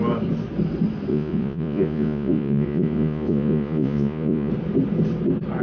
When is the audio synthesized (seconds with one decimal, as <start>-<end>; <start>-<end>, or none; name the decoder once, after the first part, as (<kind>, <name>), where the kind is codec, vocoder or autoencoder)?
1.1-4.5 (vocoder, Vocos)

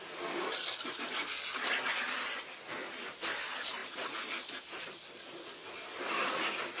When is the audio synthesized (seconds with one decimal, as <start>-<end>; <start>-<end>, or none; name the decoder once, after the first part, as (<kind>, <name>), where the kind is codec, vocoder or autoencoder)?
none

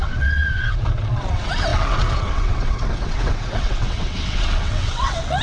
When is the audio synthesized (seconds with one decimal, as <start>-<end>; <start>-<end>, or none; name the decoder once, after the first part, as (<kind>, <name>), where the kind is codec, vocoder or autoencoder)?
0.0-5.4 (vocoder, WaveNeXt)

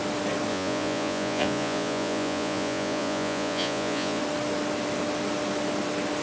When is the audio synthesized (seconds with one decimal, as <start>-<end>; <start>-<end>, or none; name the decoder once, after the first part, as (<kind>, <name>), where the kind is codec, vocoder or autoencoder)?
0.5-4.2 (vocoder, Vocos)

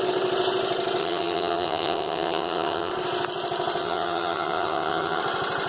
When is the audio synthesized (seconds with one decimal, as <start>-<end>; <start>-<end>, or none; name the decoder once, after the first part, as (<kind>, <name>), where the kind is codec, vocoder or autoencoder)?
1.0-2.9 (vocoder, HiFi-GAN); 3.8-5.2

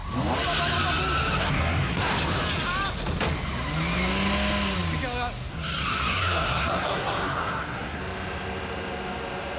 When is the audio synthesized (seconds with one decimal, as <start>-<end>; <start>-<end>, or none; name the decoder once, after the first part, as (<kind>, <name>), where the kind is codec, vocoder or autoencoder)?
1.4-2.1 (codec, SNAC); 5.5-8.0